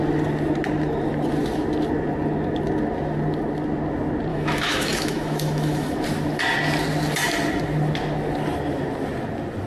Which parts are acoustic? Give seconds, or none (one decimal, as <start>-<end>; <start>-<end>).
0.0-4.3; 6.0-9.7